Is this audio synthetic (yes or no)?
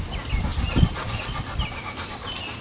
no